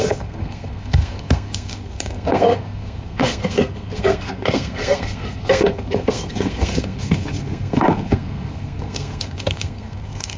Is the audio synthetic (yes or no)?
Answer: yes